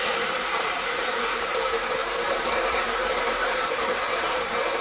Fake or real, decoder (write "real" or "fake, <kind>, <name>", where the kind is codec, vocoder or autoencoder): fake, vocoder, BigVGAN v2